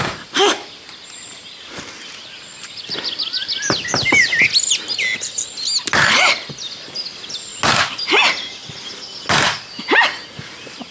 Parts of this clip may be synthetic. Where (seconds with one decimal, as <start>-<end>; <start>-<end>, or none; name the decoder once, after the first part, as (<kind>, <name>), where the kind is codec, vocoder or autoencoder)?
none